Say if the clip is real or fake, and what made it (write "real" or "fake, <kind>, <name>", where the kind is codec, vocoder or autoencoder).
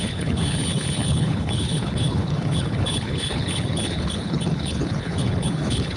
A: fake, codec, HILCodec